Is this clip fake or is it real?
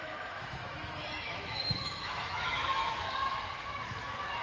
fake